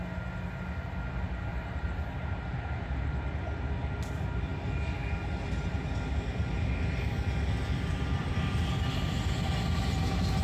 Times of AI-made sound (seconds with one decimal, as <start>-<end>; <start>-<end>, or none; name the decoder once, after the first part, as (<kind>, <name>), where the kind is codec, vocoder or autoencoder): 1.5-3.1 (vocoder, BigVGAN v2)